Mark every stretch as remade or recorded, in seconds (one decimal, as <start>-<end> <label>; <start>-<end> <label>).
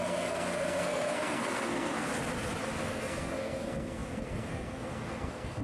0.0-2.1 remade; 2.1-2.8 recorded; 2.8-5.6 remade